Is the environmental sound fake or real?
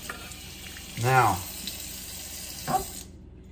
real